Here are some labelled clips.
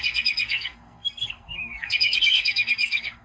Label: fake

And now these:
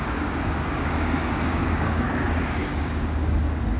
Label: fake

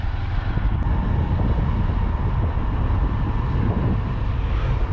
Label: real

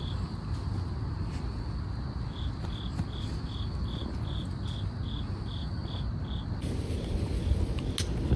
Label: real